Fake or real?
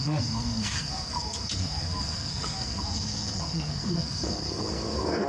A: fake